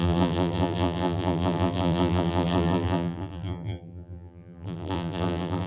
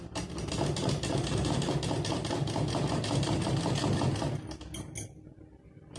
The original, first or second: second